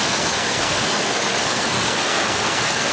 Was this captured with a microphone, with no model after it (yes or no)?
no